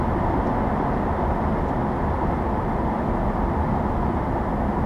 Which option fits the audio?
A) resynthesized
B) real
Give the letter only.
B